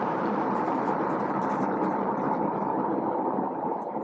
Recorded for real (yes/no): no